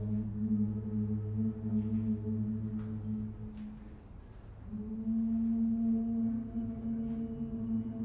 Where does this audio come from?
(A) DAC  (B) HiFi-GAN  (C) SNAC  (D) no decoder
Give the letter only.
D